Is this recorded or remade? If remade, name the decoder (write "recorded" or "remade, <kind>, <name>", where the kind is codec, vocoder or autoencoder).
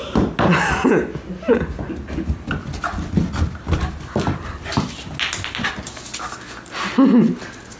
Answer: recorded